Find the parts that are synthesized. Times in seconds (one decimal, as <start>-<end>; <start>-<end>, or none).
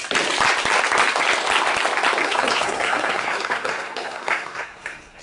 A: 2.2-5.2